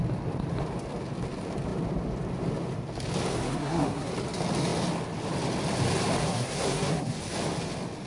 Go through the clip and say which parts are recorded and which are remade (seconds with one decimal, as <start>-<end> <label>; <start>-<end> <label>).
0.0-3.3 recorded; 3.3-4.1 remade; 4.1-6.2 recorded; 6.2-7.2 remade; 7.2-8.1 recorded